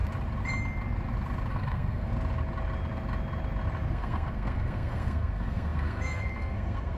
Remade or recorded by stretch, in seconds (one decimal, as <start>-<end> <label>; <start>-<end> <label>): 0.0-1.5 recorded; 1.5-2.1 remade; 2.1-3.9 recorded; 3.9-7.0 remade